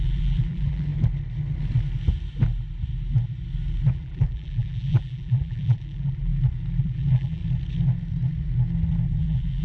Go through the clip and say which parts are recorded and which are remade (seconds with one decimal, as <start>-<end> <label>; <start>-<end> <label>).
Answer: 0.0-0.9 remade; 0.9-3.9 recorded; 3.9-6.3 remade; 6.3-6.8 recorded; 6.8-7.4 remade; 7.4-9.2 recorded; 9.2-9.6 remade